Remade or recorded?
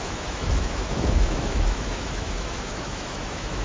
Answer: remade